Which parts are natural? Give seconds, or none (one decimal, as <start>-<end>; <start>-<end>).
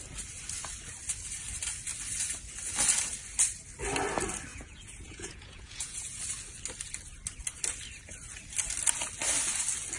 0.0-4.5; 6.2-10.0